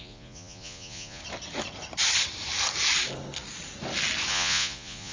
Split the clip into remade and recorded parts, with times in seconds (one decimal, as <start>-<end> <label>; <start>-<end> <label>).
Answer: 0.0-1.2 remade; 1.2-4.3 recorded; 4.3-5.1 remade